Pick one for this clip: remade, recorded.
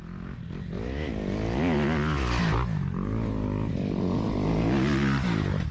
recorded